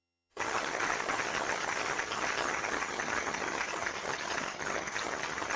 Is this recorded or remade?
remade